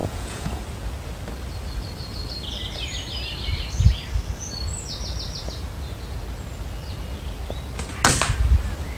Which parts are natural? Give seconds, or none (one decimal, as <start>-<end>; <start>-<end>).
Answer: 0.6-9.0